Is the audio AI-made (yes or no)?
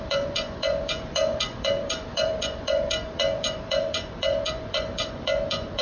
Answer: yes